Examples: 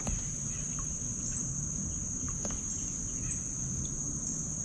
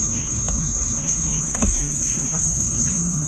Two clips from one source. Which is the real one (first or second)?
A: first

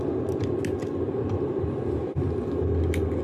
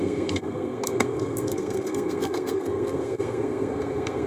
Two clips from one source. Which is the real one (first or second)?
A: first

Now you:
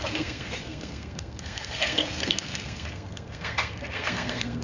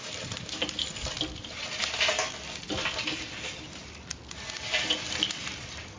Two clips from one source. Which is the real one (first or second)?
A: second